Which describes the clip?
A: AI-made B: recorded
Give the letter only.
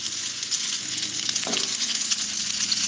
A